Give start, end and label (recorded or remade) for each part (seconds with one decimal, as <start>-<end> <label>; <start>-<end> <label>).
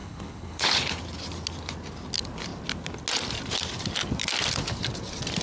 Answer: 0.0-1.0 remade; 1.0-5.4 recorded